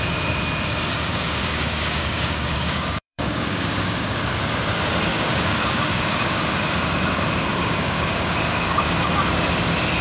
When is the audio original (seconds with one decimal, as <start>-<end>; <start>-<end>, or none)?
0.0-1.1; 4.3-5.1; 6.4-7.5; 9.3-10.0